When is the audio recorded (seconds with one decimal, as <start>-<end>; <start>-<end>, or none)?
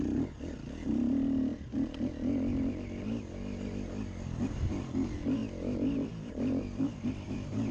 0.0-5.4